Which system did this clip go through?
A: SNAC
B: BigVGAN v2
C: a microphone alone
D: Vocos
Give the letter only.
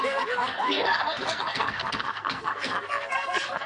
A